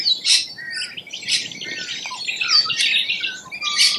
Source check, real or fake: real